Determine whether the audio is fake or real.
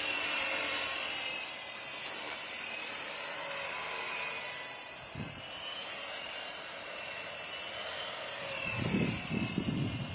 real